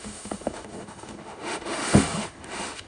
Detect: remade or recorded remade